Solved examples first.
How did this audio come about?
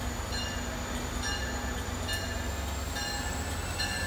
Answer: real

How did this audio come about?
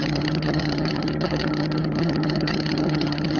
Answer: fake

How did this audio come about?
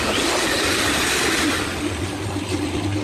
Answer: real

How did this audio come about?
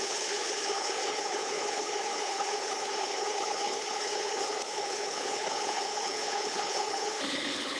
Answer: fake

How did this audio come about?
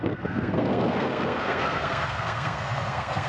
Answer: fake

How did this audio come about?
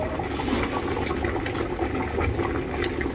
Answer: real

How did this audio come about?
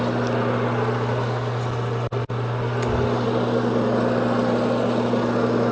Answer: real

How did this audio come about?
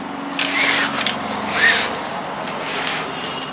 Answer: real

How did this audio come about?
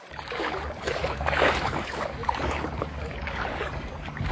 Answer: fake